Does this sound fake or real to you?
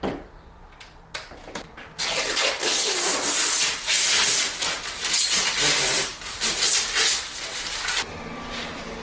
real